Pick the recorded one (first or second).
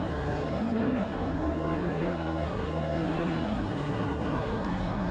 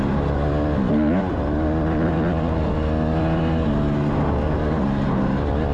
second